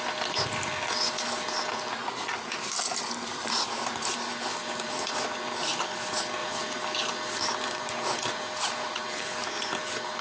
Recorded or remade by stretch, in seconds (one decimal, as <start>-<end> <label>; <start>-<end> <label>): 0.0-10.2 recorded